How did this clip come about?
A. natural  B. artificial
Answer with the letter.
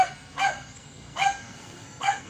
B